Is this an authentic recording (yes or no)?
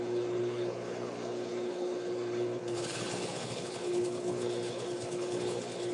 no